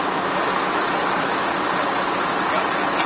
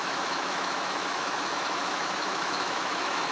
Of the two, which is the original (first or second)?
first